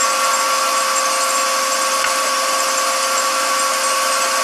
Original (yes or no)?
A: yes